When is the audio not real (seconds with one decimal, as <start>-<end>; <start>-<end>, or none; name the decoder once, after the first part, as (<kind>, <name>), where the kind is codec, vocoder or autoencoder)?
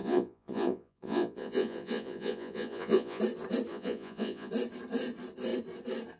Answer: 0.0-3.2 (vocoder, Vocos); 3.7-4.5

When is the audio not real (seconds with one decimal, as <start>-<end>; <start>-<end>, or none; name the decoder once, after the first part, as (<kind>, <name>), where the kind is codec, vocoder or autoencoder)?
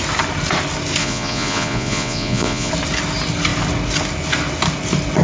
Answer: 1.0-2.7 (vocoder, Vocos)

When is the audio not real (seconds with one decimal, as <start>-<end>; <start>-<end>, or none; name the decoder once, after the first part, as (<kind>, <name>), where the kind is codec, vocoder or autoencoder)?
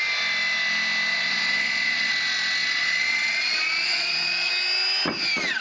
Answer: 1.1-2.1 (vocoder, Vocos); 2.6-4.5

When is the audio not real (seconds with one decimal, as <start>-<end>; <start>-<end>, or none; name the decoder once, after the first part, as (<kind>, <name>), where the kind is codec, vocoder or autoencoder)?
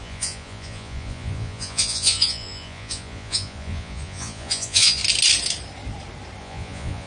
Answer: 0.0-5.0 (vocoder, Vocos); 6.4-7.1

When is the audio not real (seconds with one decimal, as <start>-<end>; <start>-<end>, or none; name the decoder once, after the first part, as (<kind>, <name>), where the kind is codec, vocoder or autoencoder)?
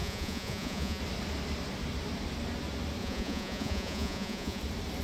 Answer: 0.0-1.0 (vocoder, Vocos); 3.0-4.6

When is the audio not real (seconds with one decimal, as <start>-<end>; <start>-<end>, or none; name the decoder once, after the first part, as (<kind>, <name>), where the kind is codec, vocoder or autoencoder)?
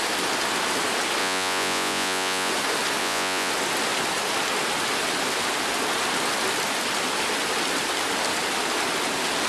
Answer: 1.2-2.5 (vocoder, Vocos); 3.0-3.5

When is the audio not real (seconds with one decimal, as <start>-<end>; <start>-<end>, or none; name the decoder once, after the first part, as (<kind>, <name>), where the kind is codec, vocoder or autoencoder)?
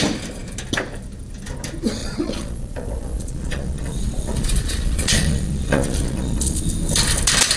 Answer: 2.0-6.6 (vocoder, Vocos)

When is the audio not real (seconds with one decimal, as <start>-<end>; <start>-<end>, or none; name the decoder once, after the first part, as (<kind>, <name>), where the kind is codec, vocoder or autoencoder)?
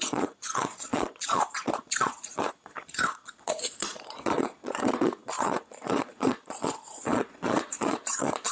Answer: 0.0-8.5 (vocoder, Vocos)